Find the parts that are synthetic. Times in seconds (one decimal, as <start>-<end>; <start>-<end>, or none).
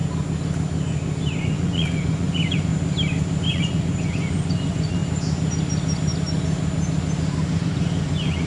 1.4-2.7; 3.5-5.0; 7.5-8.5